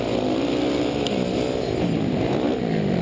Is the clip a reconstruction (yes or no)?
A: no